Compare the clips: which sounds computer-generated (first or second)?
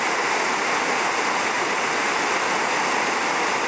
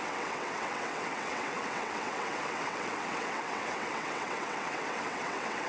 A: second